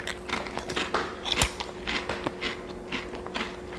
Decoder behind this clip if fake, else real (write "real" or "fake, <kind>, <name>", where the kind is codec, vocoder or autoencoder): real